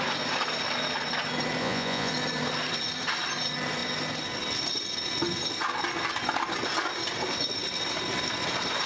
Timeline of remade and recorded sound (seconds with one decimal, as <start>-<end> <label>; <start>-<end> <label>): 0.0-1.6 recorded; 1.6-2.1 remade; 2.1-8.9 recorded